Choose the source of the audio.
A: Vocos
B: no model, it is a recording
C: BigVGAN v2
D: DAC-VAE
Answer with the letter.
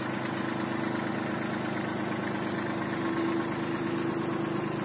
B